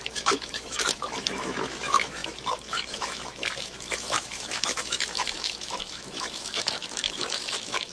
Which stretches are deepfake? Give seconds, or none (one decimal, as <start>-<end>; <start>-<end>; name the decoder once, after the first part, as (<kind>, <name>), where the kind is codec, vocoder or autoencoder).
0.0-7.9 (autoencoder, DAC-VAE)